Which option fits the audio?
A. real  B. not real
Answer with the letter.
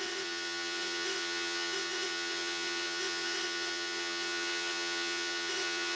B